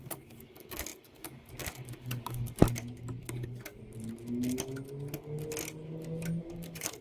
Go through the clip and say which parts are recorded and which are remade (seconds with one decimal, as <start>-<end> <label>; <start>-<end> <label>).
0.0-2.6 remade; 2.6-3.2 recorded; 3.2-3.8 remade; 3.8-6.4 recorded; 6.4-7.0 remade